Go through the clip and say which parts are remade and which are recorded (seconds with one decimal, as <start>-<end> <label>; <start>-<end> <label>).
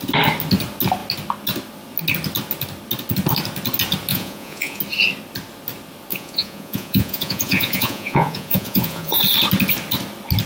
0.0-4.1 recorded; 4.1-4.8 remade; 4.8-6.1 recorded; 6.1-9.2 remade; 9.2-10.5 recorded